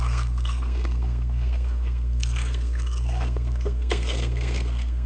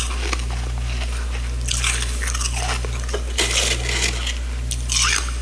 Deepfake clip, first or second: first